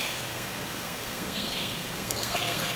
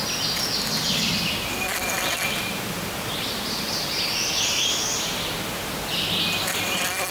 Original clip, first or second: second